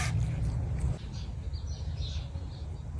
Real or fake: real